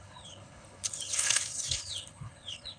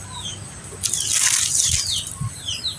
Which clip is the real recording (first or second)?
second